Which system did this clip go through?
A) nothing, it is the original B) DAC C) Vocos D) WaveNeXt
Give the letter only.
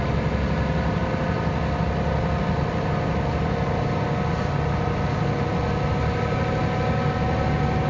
A